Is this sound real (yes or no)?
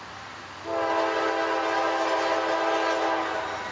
yes